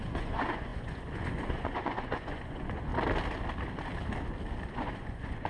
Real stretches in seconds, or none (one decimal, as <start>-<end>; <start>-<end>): 2.9-4.7